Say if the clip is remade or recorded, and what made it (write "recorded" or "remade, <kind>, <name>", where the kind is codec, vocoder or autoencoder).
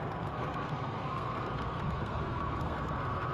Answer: remade, codec, SNAC